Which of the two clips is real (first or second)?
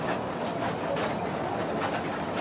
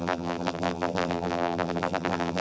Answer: first